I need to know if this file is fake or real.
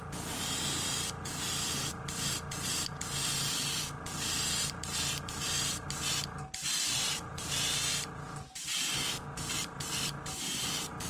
real